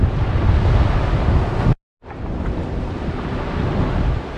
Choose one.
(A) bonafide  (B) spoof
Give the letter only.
A